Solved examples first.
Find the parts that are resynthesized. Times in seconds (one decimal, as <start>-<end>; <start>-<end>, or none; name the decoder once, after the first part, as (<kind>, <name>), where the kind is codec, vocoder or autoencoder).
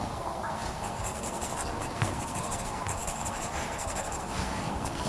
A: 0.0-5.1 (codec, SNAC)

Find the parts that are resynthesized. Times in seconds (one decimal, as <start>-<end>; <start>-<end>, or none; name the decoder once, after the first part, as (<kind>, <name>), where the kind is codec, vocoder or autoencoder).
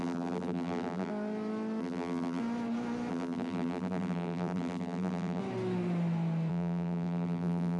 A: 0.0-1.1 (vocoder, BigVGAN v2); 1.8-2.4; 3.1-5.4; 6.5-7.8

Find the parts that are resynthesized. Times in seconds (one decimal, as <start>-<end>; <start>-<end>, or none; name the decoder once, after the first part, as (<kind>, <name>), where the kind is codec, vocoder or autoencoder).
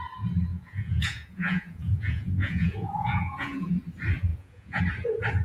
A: 0.5-3.7 (vocoder, Vocos); 4.3-4.8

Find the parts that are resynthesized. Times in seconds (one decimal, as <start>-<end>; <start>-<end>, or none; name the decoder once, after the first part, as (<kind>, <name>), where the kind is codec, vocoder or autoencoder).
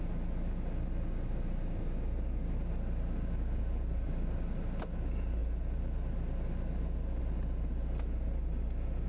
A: none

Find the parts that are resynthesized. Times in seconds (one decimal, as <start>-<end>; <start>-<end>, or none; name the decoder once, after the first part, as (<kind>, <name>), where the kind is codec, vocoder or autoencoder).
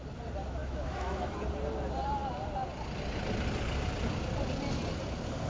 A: 0.6-1.3 (autoencoder, DAC-VAE)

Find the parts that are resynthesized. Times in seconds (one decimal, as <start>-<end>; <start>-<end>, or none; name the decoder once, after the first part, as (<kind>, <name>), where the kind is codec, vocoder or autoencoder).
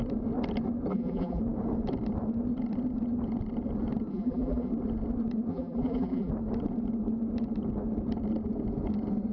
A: 0.9-1.4 (vocoder, BigVGAN v2); 4.1-4.7; 5.5-6.3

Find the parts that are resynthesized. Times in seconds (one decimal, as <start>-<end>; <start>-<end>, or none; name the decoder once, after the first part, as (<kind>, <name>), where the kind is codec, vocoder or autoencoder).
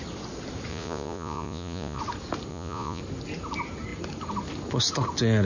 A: 0.7-2.0 (vocoder, Vocos); 2.5-3.0